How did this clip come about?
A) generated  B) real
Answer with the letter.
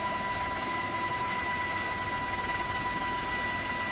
B